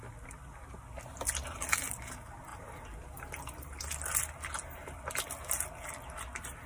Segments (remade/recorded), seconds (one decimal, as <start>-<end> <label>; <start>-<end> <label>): 0.0-6.7 recorded